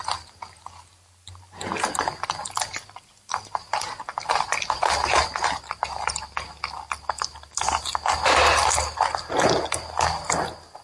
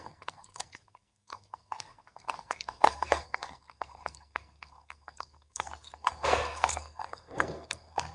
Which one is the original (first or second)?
first